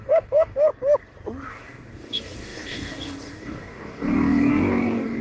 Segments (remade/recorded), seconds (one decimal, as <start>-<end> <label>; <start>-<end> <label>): 0.0-0.7 remade; 0.7-1.5 recorded; 1.5-5.2 remade